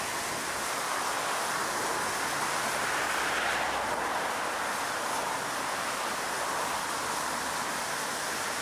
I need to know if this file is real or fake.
real